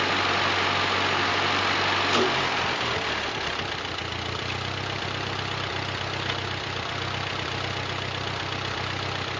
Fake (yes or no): no